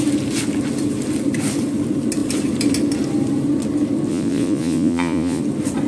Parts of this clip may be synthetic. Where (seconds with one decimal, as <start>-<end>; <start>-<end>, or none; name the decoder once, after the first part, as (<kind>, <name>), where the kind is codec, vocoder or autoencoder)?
4.1-5.4 (vocoder, Vocos)